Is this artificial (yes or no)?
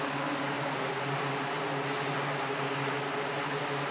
no